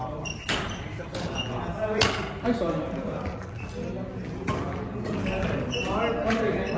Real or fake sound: real